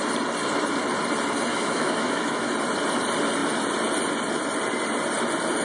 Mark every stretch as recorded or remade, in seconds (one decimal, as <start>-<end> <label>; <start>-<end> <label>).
0.0-1.5 recorded; 1.5-2.5 remade; 2.5-5.6 recorded